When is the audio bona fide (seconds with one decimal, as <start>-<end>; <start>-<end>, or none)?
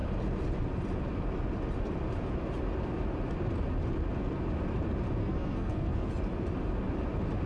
0.0-5.2; 6.1-7.5